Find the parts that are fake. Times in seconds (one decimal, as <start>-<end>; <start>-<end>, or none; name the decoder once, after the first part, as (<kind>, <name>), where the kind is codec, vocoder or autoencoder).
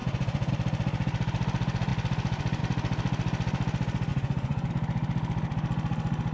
0.0-0.5 (vocoder, Vocos); 4.1-4.7